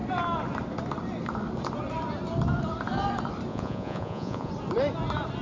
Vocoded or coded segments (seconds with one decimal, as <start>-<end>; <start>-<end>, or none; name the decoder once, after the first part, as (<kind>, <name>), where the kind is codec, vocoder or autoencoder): 3.5-4.5 (vocoder, Vocos)